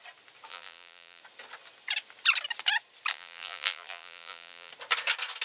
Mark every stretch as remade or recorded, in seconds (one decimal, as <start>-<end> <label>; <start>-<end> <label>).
0.0-0.5 recorded; 0.5-1.2 remade; 1.2-3.1 recorded; 3.1-4.7 remade; 4.7-5.4 recorded